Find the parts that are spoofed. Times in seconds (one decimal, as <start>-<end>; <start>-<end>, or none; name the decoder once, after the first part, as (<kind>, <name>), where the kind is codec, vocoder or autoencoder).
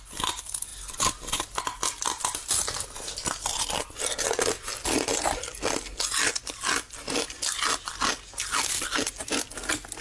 none